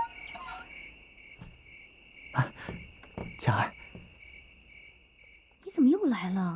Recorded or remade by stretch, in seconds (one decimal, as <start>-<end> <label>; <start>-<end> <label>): 0.0-0.5 recorded; 0.5-1.3 remade; 1.3-6.6 recorded